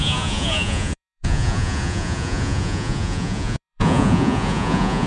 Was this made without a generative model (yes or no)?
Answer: no